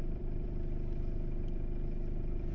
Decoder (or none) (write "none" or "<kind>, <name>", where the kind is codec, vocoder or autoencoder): vocoder, BigVGAN v2